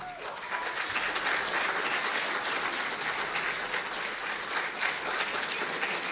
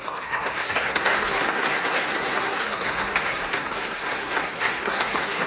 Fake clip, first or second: second